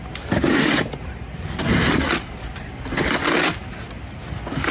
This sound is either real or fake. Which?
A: real